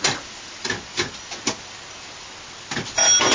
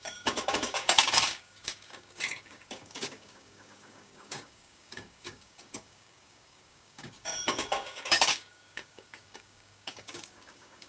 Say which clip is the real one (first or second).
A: first